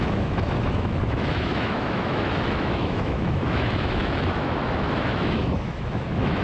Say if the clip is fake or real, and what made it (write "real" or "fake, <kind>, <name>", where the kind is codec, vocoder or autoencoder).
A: fake, autoencoder, DAC-VAE